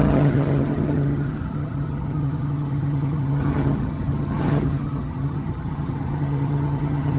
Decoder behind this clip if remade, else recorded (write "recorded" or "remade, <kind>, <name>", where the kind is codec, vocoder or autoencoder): remade, vocoder, HiFi-GAN